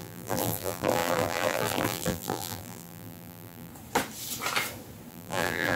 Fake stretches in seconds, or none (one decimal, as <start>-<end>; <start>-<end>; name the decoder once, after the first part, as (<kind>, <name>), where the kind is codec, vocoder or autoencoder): 0.0-3.7 (vocoder, BigVGAN v2); 5.1-5.8